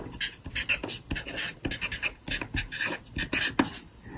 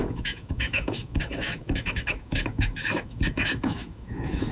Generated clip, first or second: second